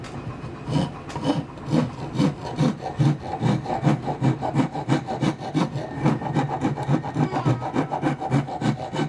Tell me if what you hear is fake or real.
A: real